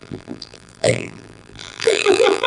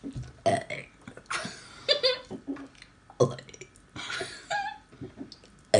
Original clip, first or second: second